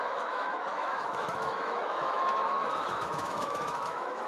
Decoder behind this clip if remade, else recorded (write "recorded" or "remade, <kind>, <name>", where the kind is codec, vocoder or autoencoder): remade, autoencoder, DAC-VAE